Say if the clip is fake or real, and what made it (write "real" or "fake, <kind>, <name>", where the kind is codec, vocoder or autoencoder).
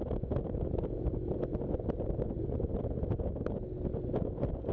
real